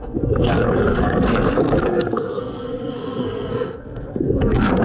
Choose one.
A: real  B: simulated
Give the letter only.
B